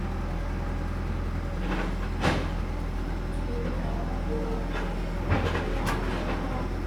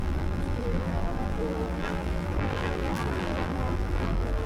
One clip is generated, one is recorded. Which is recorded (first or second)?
first